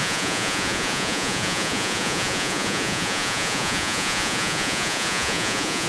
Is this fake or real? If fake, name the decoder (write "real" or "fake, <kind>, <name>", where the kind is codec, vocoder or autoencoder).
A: fake, vocoder, Vocos